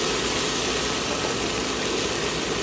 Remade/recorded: recorded